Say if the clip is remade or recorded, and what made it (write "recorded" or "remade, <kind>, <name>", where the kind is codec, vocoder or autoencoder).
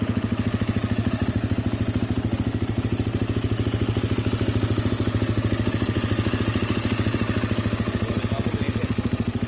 recorded